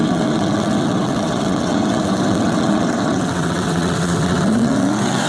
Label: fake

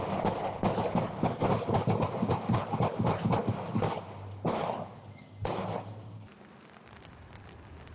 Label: real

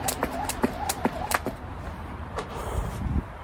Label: fake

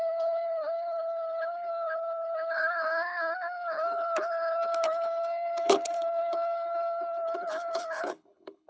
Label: fake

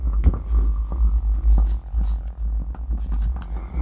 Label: real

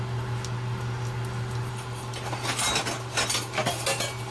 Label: real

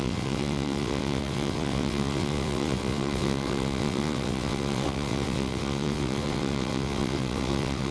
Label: fake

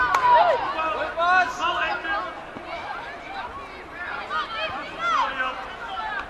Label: real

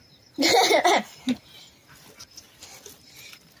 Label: real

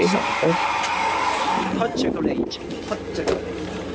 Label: real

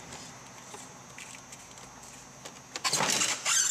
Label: real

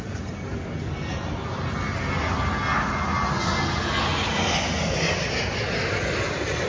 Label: real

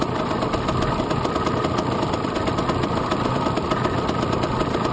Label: real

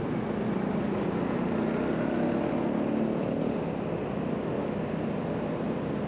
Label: real